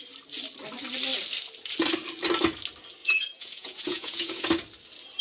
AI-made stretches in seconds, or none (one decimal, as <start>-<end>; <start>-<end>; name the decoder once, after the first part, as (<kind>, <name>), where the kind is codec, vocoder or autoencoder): 3.0-4.5 (vocoder, Vocos)